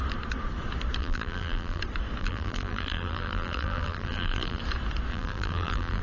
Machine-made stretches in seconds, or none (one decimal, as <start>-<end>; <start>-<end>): 1.0-1.8; 2.2-4.6; 5.1-6.0